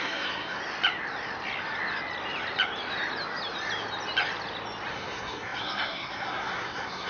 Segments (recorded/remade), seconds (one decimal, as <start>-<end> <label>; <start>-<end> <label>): 0.0-0.6 remade; 0.6-4.9 recorded; 4.9-7.1 remade